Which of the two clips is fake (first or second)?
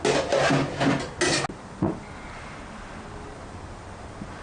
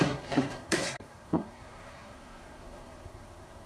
second